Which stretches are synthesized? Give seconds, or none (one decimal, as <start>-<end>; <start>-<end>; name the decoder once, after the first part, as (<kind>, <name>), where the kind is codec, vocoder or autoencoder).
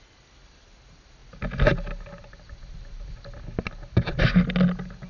none